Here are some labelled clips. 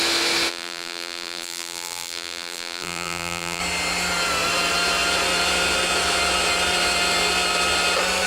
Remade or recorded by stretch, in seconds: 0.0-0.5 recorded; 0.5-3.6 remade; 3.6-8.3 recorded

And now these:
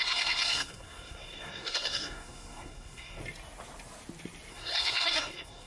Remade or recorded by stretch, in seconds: 0.0-3.2 remade; 3.2-4.5 recorded; 4.5-5.7 remade

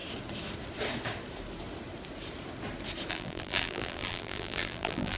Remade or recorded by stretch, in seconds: 0.0-3.1 recorded; 3.1-5.2 remade

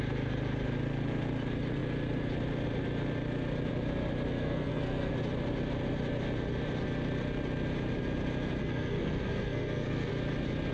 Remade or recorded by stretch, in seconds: 0.0-4.3 recorded; 4.3-5.1 remade; 5.1-8.6 recorded; 8.6-10.1 remade; 10.1-10.7 recorded

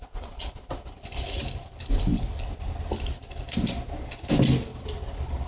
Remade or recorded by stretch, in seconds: 0.0-0.5 remade; 0.5-5.5 recorded

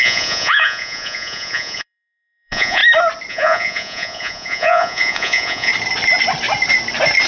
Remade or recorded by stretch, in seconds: 0.0-2.8 remade; 2.8-3.3 recorded; 3.3-5.7 remade; 5.7-7.3 recorded